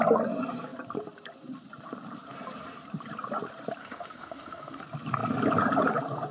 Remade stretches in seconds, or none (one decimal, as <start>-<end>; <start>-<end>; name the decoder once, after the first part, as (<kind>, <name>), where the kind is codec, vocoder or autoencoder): 3.8-4.8 (autoencoder, DAC-VAE)